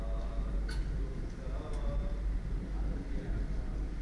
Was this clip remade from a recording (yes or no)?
no